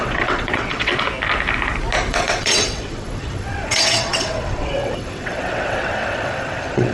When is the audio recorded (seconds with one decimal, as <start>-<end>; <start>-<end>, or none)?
0.9-2.1